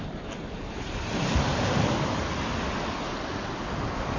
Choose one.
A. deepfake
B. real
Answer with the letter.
B